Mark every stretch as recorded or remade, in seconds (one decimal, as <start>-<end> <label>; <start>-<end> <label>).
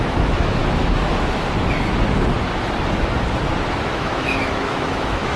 0.0-0.6 remade; 0.6-3.8 recorded; 3.8-5.4 remade